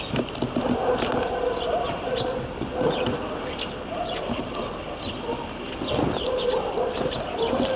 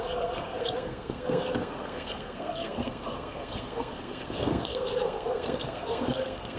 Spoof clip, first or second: second